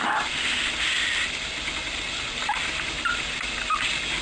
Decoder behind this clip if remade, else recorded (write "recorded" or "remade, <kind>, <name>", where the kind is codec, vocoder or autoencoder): recorded